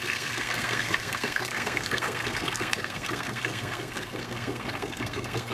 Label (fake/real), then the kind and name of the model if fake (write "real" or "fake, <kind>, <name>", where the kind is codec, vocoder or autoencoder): fake, codec, SNAC